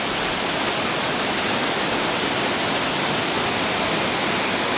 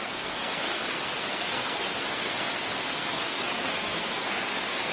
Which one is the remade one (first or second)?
second